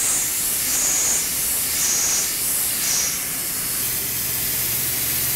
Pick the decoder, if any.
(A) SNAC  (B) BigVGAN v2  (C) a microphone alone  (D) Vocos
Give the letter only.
C